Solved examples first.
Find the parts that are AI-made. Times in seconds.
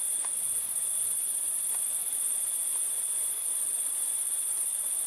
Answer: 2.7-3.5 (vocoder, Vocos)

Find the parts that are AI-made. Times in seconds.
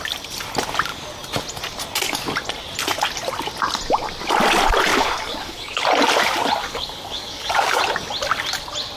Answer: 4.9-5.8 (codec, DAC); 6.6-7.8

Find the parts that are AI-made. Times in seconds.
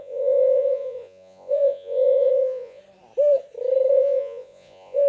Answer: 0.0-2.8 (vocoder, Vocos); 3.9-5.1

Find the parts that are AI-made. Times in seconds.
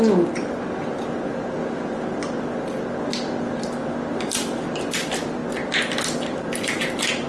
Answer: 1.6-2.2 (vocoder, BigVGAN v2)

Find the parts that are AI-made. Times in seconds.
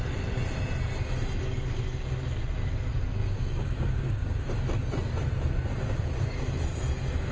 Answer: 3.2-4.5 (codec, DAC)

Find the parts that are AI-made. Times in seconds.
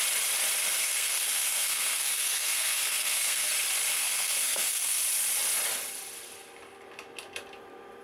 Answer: 0.8-3.5 (codec, SNAC); 3.9-5.0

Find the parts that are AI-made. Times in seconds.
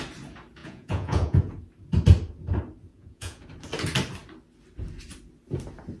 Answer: 0.6-1.5 (vocoder, Vocos); 2.9-3.4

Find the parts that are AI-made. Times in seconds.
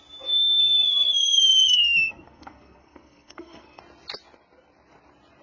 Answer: 0.6-3.8 (codec, SNAC)